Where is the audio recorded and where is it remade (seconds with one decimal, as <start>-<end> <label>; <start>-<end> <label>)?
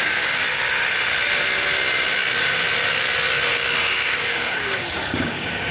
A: 0.0-0.4 remade; 0.4-3.8 recorded; 3.8-5.7 remade